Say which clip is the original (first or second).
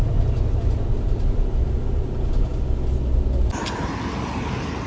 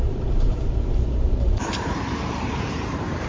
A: first